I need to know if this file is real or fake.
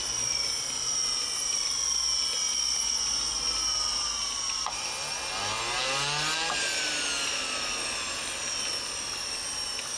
real